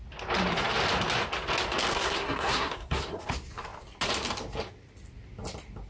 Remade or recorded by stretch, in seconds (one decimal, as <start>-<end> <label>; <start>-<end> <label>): 0.0-1.9 recorded; 1.9-3.3 remade; 3.3-5.9 recorded